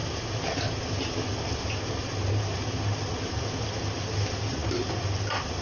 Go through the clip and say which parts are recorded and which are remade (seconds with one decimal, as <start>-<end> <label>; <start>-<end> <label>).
0.0-5.6 recorded